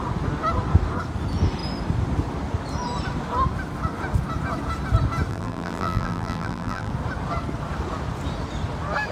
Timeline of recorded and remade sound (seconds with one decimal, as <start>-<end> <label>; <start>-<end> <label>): 0.0-5.3 recorded; 5.3-6.9 remade; 6.9-9.1 recorded